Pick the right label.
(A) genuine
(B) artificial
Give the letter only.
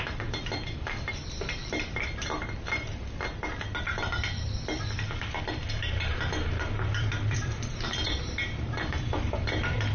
B